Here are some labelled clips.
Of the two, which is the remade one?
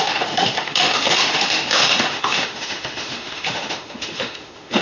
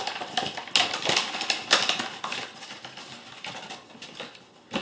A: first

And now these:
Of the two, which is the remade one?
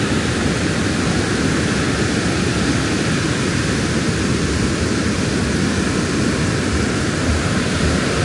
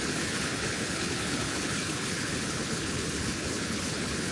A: second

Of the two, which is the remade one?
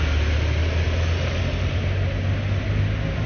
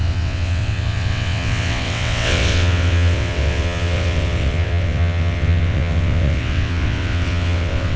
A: second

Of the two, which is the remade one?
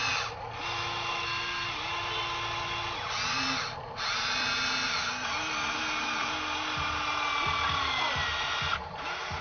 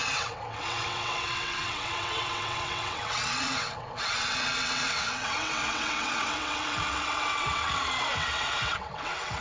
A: second